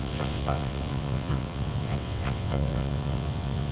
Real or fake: fake